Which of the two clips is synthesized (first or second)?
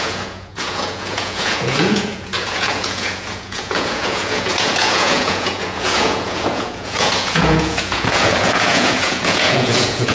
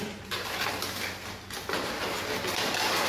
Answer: first